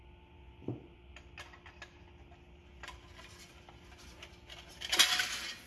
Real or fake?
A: real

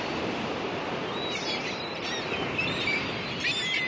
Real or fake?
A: real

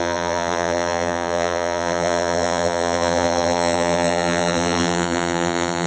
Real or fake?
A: fake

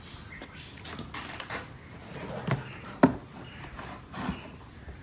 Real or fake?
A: real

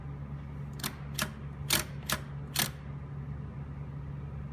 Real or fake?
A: real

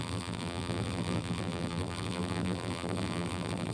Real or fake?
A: fake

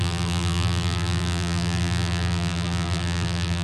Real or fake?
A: fake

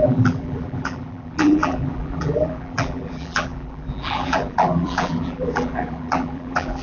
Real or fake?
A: fake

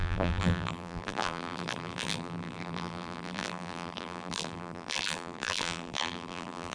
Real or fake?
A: fake